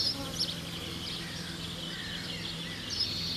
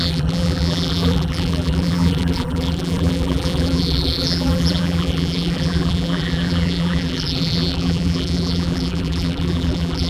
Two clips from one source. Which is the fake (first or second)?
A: second